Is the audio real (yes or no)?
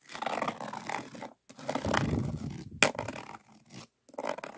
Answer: yes